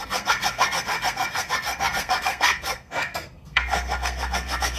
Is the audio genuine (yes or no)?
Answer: no